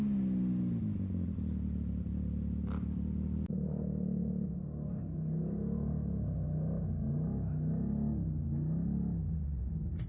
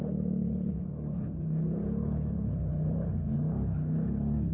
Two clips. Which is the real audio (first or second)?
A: first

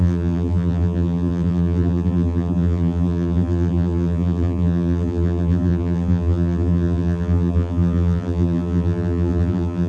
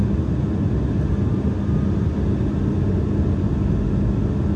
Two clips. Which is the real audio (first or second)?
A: second